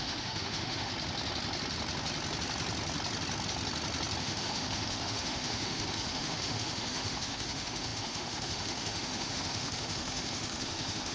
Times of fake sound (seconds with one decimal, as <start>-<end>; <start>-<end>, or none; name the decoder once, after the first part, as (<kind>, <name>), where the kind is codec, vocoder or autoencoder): 0.0-0.9 (autoencoder, DAC-VAE); 4.2-11.1